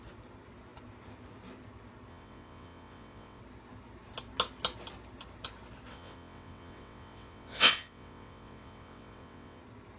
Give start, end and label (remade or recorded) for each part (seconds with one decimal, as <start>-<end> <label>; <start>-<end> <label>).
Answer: 0.0-2.1 recorded; 2.1-3.4 remade; 3.4-5.9 recorded; 5.9-9.6 remade; 9.6-10.0 recorded